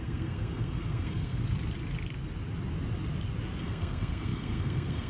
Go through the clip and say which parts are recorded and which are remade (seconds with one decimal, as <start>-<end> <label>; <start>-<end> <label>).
0.0-1.4 remade; 1.4-3.6 recorded; 3.6-5.1 remade